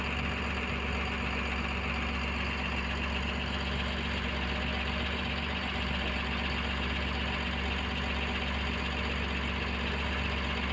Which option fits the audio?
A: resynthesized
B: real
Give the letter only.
B